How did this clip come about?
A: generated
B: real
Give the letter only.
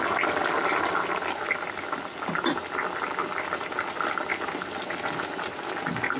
B